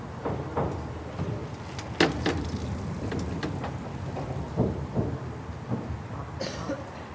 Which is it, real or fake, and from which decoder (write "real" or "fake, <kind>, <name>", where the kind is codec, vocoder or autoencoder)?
real